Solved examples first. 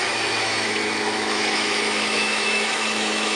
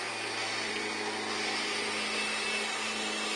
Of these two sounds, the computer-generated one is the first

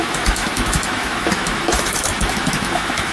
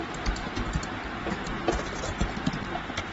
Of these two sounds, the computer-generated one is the first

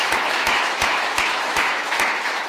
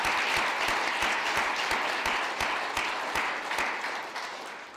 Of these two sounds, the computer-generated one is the first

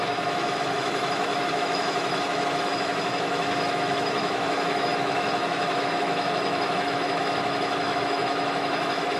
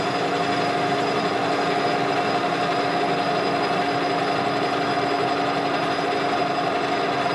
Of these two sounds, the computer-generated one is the first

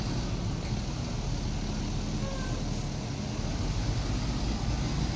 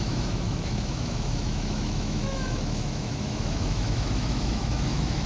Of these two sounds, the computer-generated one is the second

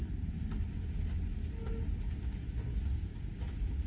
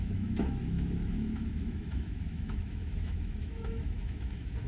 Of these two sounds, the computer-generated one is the second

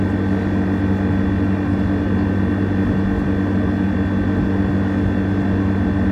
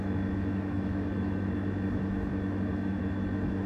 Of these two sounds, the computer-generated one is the second